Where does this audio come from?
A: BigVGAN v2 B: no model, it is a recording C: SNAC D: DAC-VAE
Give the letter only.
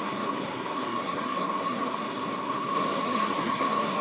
C